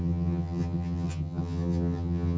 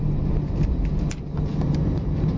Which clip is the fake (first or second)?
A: first